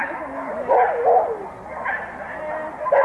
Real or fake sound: real